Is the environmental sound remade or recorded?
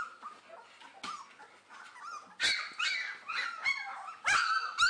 recorded